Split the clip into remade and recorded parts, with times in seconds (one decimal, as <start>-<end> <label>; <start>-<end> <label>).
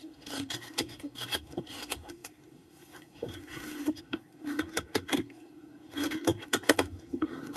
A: 0.0-7.6 remade